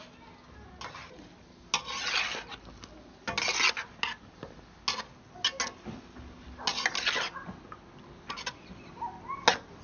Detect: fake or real real